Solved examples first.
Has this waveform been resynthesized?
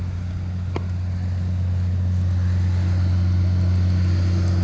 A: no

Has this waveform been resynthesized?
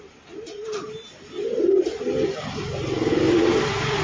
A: no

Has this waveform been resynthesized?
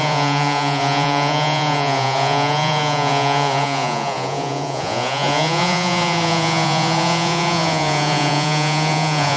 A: yes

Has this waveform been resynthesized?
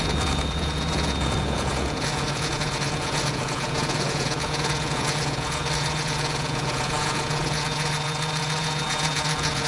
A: yes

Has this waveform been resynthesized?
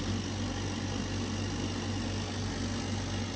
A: no